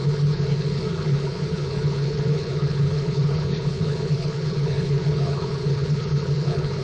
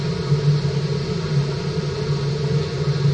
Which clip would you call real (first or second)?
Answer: second